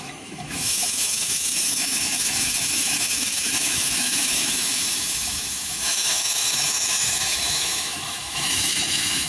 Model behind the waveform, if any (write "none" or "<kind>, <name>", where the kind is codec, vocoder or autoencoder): autoencoder, DAC-VAE